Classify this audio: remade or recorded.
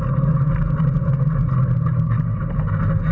recorded